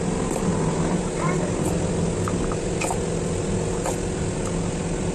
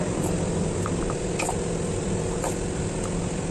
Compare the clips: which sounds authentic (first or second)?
first